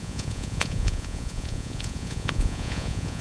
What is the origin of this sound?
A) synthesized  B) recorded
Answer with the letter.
A